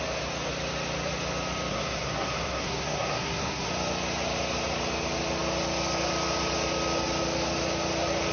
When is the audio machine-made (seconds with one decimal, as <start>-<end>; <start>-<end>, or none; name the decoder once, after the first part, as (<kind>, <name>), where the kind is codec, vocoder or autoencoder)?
1.7-3.7 (codec, SNAC)